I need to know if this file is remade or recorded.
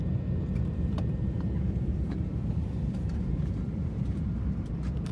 remade